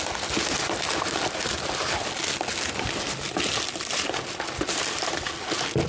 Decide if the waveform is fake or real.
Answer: real